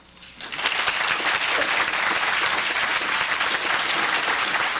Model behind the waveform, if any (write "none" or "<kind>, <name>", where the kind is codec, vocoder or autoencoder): none